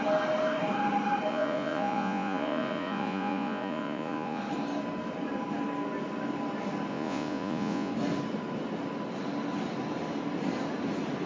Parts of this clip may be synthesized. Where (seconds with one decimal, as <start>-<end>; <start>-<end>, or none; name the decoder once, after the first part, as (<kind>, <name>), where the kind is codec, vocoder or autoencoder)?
1.3-4.4 (vocoder, Vocos); 6.9-7.9